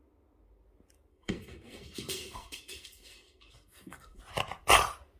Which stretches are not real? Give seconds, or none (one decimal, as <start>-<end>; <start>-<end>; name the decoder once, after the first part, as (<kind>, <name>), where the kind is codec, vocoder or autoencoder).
1.1-4.2 (codec, SNAC)